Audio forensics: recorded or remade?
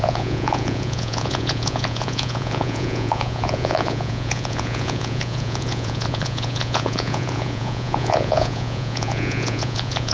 remade